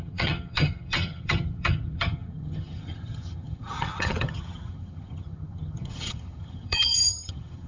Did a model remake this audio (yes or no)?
yes